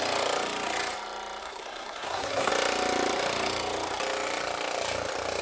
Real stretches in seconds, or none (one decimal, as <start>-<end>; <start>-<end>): 0.0-1.4; 2.5-5.4